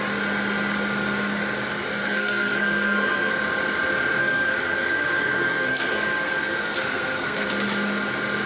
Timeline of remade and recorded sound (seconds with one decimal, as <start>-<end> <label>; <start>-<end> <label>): 0.0-2.0 recorded; 2.0-3.3 remade; 3.3-4.2 recorded; 4.2-7.5 remade; 7.5-8.5 recorded